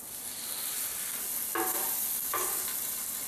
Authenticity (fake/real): fake